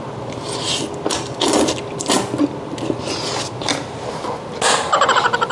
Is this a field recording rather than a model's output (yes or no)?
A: yes